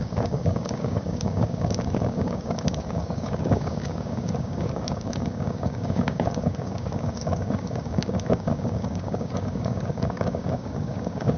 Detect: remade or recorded remade